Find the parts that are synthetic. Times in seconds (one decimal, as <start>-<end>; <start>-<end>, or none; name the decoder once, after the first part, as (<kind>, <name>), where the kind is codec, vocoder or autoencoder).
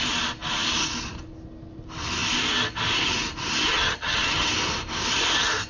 3.7-4.5 (vocoder, HiFi-GAN)